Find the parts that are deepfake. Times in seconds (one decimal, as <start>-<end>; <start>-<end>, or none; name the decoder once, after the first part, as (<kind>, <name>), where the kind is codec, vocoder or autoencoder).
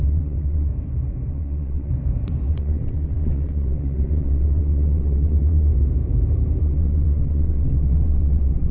0.0-0.7 (vocoder, WaveNeXt); 1.3-1.9; 2.5-5.7; 6.6-8.7